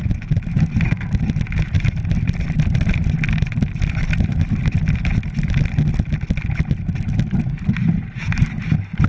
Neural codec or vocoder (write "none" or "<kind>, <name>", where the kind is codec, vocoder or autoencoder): none